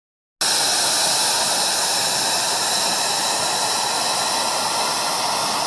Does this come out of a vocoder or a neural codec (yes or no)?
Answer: no